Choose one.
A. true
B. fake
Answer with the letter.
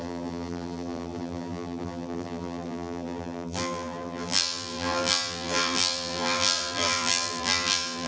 B